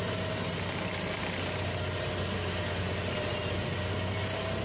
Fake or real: real